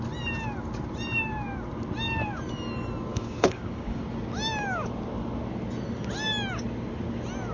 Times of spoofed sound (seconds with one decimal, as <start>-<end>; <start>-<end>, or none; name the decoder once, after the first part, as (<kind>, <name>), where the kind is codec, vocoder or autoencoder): 3.1-4.0 (codec, DAC)